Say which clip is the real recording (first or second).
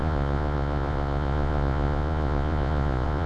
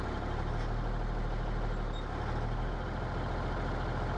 second